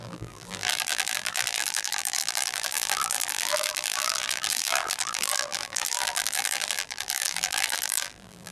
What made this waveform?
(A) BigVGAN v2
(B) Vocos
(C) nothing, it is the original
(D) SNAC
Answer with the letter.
A